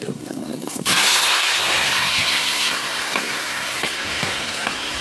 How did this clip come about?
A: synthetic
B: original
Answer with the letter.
A